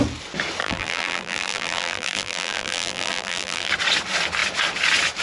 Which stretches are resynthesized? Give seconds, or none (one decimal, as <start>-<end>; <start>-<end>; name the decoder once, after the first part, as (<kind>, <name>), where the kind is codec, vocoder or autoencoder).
0.6-3.7 (vocoder, BigVGAN v2)